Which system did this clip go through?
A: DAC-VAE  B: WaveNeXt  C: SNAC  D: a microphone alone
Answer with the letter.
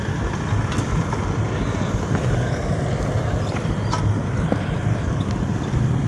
D